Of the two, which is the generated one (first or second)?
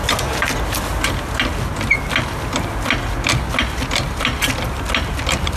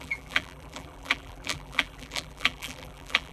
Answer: second